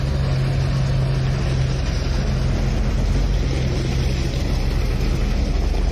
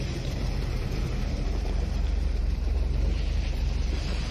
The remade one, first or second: second